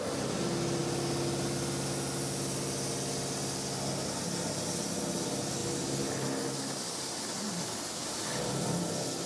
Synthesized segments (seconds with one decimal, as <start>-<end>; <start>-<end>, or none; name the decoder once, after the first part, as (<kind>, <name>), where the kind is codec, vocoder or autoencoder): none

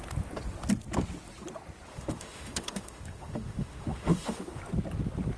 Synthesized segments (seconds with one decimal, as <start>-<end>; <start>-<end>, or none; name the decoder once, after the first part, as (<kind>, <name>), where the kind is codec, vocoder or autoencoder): 1.9-4.6 (autoencoder, DAC-VAE)

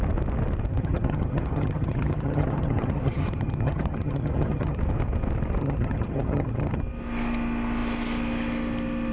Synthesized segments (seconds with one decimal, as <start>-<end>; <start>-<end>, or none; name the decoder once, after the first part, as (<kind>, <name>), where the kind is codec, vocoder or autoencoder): 0.7-4.8 (vocoder, HiFi-GAN); 5.6-6.8